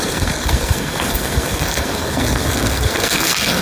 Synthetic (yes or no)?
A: yes